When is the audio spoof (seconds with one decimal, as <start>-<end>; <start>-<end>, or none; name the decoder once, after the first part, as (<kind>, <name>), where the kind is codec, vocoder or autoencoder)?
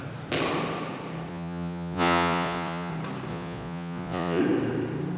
1.3-2.9 (vocoder, Vocos); 3.3-4.4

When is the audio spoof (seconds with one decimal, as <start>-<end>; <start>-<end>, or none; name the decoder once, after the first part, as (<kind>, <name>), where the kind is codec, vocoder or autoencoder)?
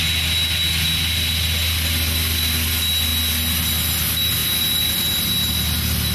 none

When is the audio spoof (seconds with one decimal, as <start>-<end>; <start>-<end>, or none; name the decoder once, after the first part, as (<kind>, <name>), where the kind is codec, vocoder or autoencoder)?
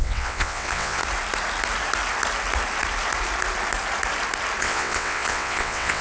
0.0-1.0 (vocoder, WaveNeXt); 4.6-6.0